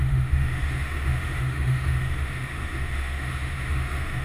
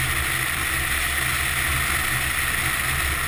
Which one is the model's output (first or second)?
first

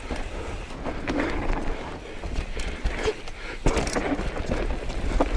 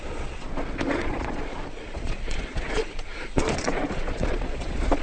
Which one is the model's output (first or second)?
second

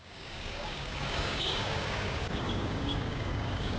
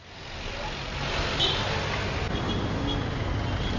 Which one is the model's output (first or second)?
first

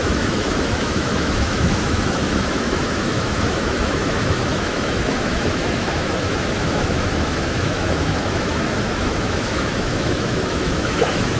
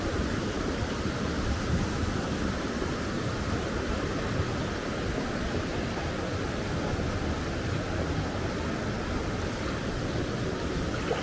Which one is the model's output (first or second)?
first